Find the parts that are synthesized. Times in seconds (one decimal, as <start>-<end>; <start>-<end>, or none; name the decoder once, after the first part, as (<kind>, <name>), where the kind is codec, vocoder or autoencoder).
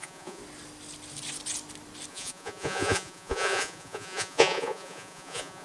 0.0-0.4 (vocoder, Vocos); 2.1-5.6